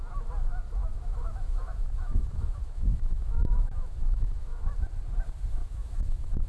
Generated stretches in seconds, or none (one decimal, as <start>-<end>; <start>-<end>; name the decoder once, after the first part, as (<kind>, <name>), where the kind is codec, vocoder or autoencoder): 0.8-4.7 (autoencoder, DAC-VAE); 5.6-6.5